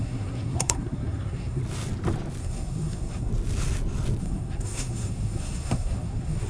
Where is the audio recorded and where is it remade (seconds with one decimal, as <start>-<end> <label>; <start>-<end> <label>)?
0.0-1.6 remade; 1.6-2.4 recorded; 2.4-3.3 remade; 3.3-4.2 recorded; 4.2-6.5 remade